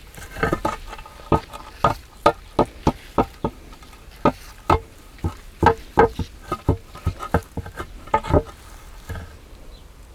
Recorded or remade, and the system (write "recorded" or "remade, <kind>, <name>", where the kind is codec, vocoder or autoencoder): recorded